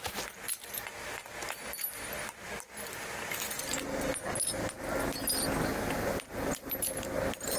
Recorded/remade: recorded